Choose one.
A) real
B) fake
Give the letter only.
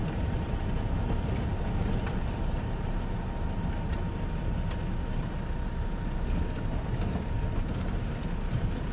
A